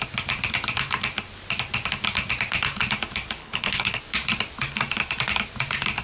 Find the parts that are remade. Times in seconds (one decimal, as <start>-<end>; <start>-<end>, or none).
3.4-4.0